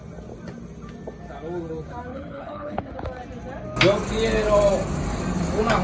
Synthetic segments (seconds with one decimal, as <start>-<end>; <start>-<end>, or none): 2.1-2.8